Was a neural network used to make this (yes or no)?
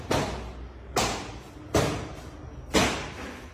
no